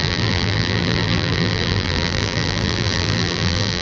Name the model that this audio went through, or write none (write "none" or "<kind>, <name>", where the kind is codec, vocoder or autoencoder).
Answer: vocoder, BigVGAN v2